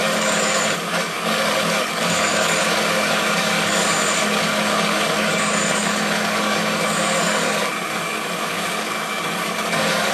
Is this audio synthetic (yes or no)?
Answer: yes